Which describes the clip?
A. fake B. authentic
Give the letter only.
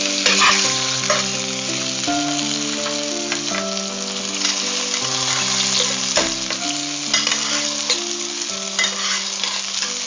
B